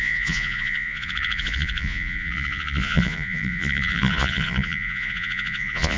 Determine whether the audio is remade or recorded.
remade